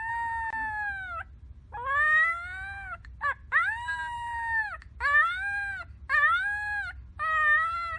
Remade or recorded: recorded